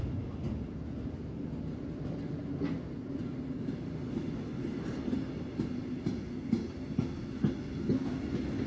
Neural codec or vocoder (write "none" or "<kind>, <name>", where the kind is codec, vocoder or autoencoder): none